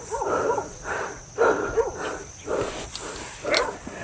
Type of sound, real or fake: real